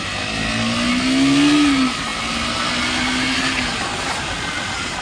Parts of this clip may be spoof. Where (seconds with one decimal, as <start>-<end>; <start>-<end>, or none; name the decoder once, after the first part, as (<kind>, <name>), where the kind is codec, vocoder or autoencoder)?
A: none